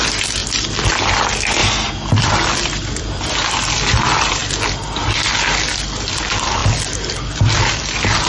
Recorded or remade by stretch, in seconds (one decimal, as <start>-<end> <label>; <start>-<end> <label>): 0.0-1.6 remade; 1.6-2.5 recorded; 2.5-4.4 remade; 4.4-5.7 recorded; 5.7-6.6 remade; 6.6-7.7 recorded; 7.7-8.3 remade